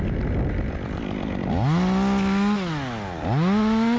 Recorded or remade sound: recorded